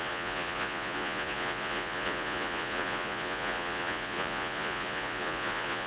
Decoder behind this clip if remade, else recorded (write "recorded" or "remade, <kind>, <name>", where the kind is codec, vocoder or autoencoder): remade, vocoder, Vocos